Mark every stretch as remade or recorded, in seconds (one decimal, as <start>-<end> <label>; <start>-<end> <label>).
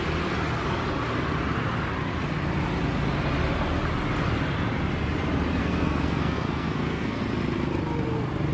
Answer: 0.0-5.6 recorded; 5.6-7.2 remade; 7.2-8.5 recorded